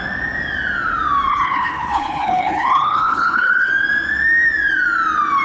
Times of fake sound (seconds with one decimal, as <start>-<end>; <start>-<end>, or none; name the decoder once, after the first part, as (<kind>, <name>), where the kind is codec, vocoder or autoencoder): 1.3-3.7 (codec, HILCodec)